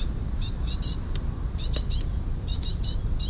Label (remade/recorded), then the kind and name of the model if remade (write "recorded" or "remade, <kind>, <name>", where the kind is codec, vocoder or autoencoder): recorded